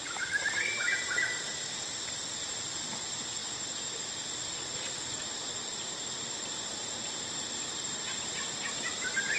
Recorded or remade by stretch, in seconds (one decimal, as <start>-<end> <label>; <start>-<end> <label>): 0.0-9.4 recorded